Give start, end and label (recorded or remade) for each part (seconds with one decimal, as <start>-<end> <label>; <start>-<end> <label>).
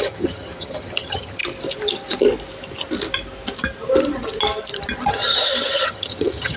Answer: 0.0-1.4 remade; 1.4-5.1 recorded; 5.1-6.6 remade